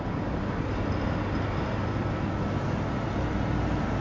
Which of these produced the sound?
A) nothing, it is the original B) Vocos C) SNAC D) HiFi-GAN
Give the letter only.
A